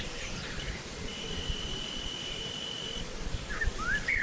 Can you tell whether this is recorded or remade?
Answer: remade